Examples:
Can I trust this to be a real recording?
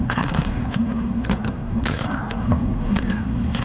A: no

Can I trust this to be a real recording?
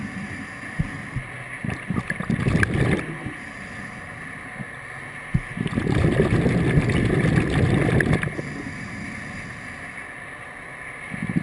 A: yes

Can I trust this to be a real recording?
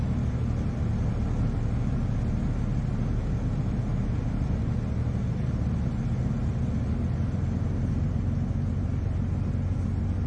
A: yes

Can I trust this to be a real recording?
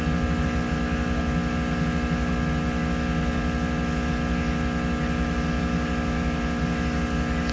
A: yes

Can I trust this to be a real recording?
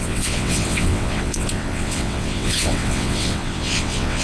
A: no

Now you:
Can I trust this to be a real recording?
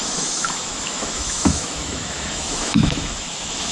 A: no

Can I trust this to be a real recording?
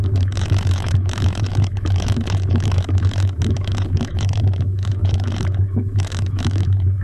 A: no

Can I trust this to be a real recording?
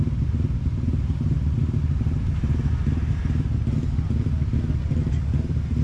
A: yes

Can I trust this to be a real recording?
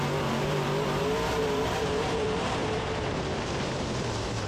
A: no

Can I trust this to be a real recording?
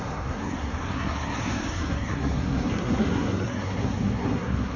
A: no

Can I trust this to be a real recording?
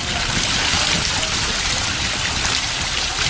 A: yes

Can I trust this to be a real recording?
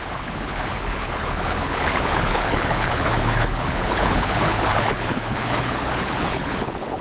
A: no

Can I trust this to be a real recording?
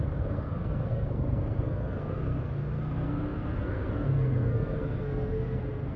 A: no